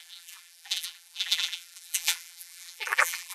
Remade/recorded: remade